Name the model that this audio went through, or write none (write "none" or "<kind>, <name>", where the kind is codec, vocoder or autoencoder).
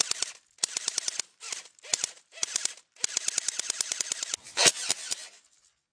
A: none